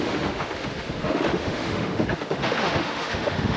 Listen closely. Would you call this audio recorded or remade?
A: remade